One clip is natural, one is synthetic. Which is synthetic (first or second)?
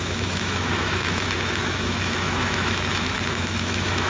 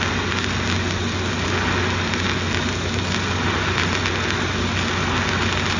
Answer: first